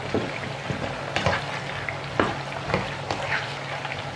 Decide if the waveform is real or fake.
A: real